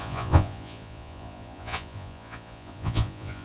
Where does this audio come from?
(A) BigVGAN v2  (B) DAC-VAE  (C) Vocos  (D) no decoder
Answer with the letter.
C